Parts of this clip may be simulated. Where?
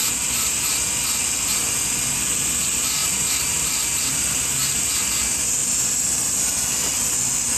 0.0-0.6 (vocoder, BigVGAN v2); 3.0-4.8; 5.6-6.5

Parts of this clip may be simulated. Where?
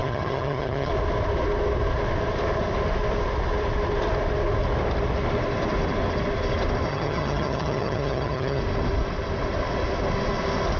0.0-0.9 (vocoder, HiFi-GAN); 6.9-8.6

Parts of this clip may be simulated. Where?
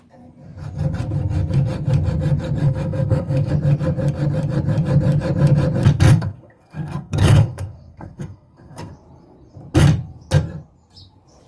2.6-3.5 (codec, SNAC); 6.1-8.9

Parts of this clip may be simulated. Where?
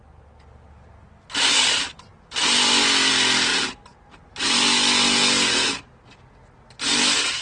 none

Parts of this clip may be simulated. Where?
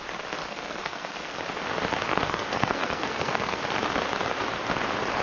0.4-1.4 (codec, SNAC); 2.1-3.6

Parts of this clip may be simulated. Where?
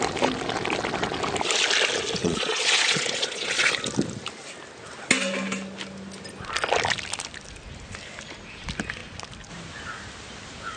2.2-3.7 (vocoder, Vocos)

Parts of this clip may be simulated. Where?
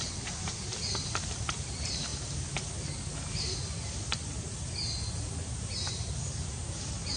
none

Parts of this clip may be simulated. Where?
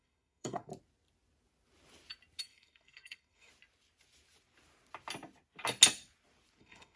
0.0-0.7 (codec, SNAC); 2.4-3.5; 6.6-7.0